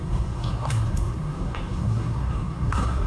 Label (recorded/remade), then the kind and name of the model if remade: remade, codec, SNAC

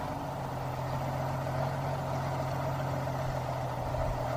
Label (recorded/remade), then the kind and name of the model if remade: recorded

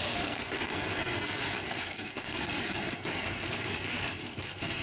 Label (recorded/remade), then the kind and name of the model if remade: remade, codec, SNAC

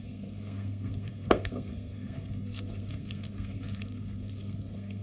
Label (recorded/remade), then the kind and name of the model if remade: remade, codec, SNAC